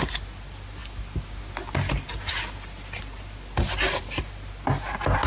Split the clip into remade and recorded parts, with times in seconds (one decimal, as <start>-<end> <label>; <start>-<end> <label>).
0.0-5.3 recorded